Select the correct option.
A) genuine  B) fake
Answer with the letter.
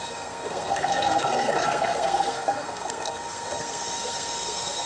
B